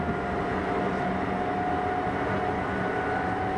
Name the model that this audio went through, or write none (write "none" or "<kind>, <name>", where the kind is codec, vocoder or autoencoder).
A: none